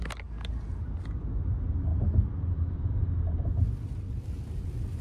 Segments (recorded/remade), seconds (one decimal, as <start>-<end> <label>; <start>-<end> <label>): 0.0-5.0 recorded